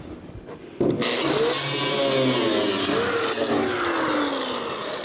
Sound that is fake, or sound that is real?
real